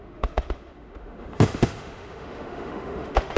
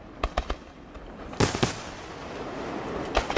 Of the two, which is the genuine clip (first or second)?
second